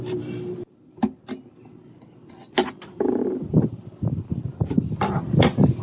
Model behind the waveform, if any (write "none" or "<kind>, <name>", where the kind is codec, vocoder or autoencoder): none